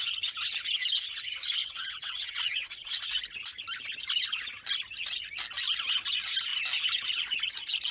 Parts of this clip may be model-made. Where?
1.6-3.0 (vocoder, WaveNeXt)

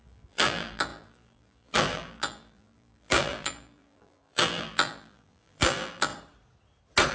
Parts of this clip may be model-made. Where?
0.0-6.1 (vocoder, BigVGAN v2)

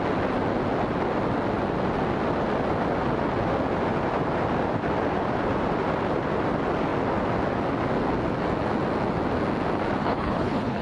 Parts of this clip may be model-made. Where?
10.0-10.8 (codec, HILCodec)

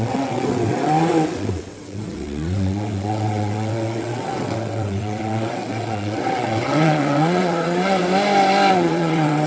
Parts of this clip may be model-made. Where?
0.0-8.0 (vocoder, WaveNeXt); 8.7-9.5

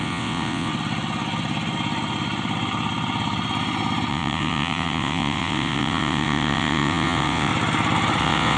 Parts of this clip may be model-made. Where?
0.0-0.7 (vocoder, WaveNeXt); 4.1-7.5; 8.2-8.6

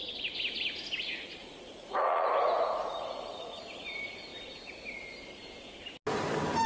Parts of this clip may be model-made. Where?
1.4-3.6 (vocoder, Vocos)

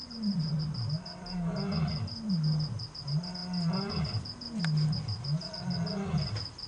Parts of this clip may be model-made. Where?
0.0-0.6 (vocoder, Vocos)